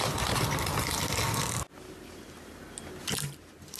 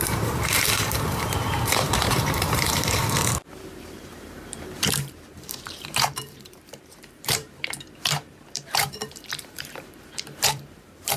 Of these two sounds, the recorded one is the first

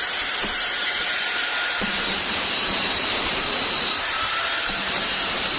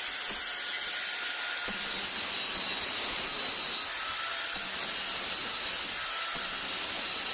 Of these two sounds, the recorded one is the second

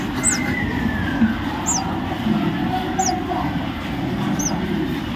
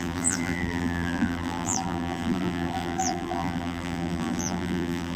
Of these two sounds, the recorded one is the first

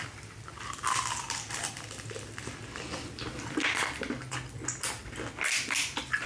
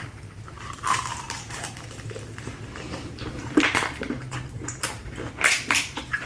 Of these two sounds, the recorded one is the first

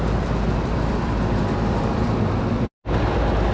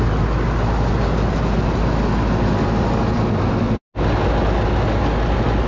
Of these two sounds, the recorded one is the second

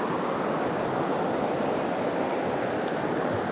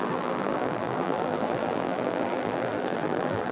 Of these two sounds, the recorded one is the first